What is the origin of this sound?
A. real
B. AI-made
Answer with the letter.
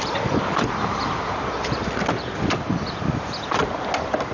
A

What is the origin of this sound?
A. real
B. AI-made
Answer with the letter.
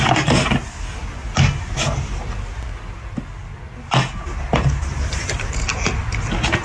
A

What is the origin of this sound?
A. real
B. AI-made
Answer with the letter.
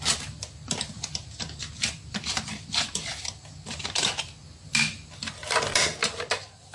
A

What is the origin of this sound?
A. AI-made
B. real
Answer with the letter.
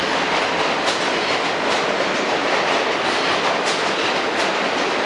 B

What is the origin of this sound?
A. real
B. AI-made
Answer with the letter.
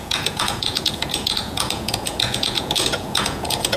B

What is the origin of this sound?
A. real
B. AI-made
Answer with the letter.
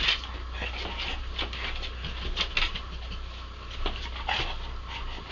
A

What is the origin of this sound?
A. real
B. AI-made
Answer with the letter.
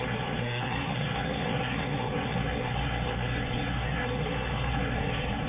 B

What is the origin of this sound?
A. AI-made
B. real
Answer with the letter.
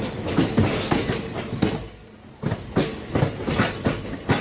B